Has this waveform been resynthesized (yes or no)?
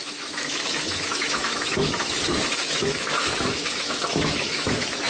yes